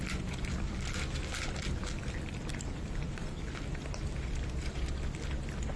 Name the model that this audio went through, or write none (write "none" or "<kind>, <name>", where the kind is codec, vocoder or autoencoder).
vocoder, BigVGAN v2